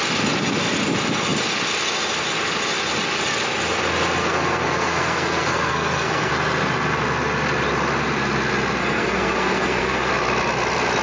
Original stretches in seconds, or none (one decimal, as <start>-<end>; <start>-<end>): 0.0-4.2; 6.3-8.8; 10.1-11.0